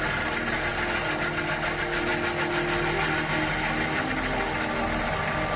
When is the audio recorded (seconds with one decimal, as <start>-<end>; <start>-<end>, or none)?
0.0-5.6